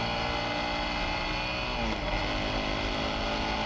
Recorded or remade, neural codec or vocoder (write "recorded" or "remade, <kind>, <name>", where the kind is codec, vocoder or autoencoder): recorded